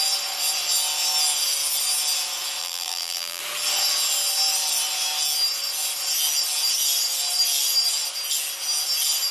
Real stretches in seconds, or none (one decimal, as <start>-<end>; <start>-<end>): 0.0-2.6; 3.4-9.3